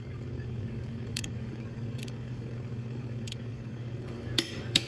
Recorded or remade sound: remade